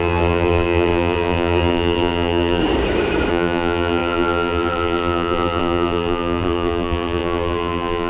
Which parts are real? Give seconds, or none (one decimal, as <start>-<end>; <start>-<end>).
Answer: 2.6-3.3